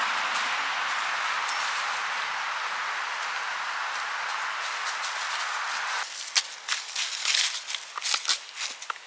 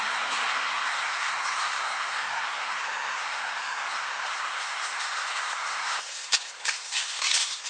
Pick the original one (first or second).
first